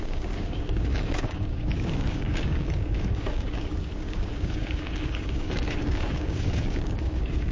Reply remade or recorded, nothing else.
remade